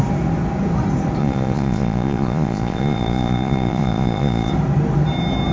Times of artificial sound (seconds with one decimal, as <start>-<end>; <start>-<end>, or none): 1.2-4.5